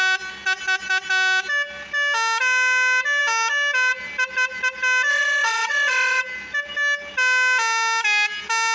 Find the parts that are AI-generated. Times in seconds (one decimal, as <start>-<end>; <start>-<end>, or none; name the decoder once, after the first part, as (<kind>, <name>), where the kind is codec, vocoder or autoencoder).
5.1-6.2 (vocoder, WaveNeXt)